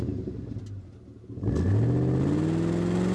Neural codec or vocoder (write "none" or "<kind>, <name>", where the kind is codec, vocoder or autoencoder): none